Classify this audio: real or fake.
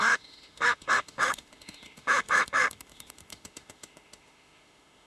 fake